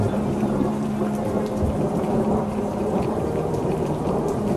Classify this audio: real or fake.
fake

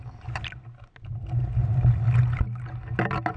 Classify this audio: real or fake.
real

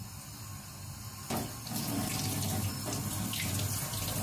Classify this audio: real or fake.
real